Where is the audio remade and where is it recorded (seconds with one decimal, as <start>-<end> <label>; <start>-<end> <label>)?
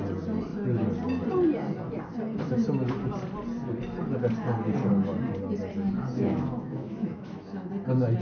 0.0-6.1 recorded; 6.1-7.7 remade; 7.7-8.2 recorded